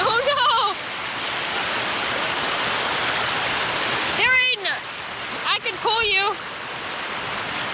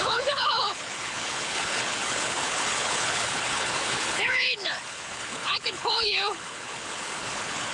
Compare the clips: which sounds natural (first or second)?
first